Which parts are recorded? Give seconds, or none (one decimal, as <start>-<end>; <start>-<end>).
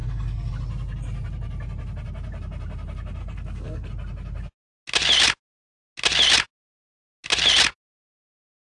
0.5-3.2; 3.9-8.6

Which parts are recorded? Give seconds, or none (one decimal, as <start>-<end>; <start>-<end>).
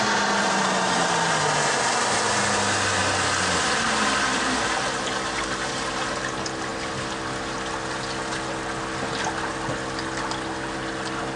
0.0-11.4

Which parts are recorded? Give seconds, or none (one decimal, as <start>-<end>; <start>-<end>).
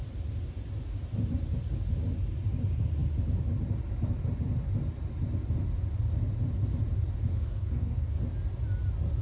0.0-7.3; 8.2-9.2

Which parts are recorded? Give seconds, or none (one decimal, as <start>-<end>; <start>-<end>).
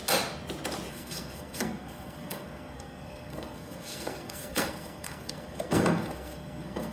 0.0-0.9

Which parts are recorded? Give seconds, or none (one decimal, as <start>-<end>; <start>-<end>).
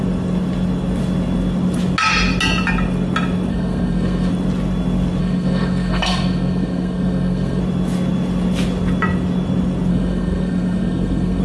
0.0-3.5; 4.3-5.2; 7.6-9.9